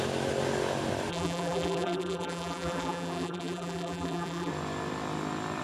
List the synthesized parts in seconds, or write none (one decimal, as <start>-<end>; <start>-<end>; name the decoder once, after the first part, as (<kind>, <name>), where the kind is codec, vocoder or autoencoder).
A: 1.1-4.5 (vocoder, BigVGAN v2)

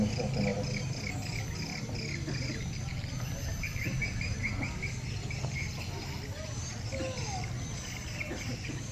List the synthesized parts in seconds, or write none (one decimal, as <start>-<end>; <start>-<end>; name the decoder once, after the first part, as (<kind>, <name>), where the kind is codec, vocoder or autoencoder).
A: none

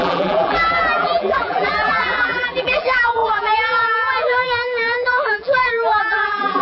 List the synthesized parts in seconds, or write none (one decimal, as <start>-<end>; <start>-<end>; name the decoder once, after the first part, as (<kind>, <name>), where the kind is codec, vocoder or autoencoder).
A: 0.0-6.6 (vocoder, BigVGAN v2)

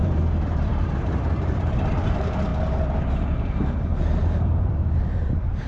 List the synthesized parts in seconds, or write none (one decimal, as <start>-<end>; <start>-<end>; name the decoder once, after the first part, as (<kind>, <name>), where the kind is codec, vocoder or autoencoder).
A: 0.0-2.5 (vocoder, BigVGAN v2); 3.1-5.7

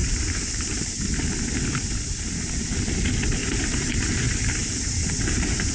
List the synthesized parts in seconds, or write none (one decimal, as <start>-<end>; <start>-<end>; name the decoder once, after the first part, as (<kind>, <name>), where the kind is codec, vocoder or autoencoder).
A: 0.0-1.0 (vocoder, BigVGAN v2); 3.4-4.0; 4.6-5.7

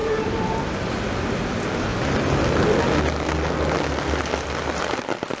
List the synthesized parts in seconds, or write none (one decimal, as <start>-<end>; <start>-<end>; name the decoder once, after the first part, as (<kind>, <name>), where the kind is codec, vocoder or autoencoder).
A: 0.0-0.9 (vocoder, BigVGAN v2)